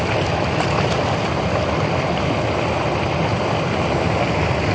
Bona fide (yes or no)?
yes